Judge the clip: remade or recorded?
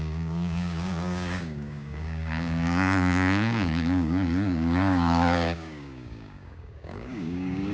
remade